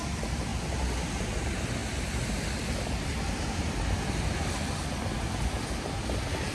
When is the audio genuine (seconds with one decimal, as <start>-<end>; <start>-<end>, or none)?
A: 0.0-6.5